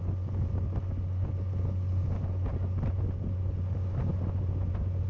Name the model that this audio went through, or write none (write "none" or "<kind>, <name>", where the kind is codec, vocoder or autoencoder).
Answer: none